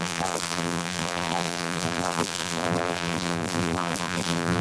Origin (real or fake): fake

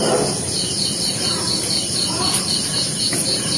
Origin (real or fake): fake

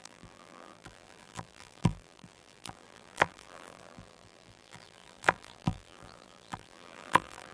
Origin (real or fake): fake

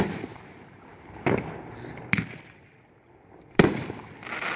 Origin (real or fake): fake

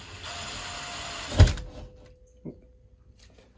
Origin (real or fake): real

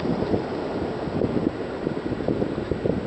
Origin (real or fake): real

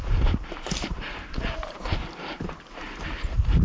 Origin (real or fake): fake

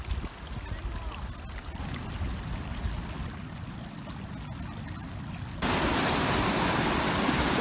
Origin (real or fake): real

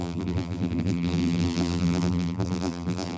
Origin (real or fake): fake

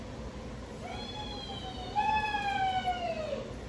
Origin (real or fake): real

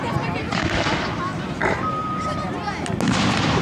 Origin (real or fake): real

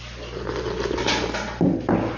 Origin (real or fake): real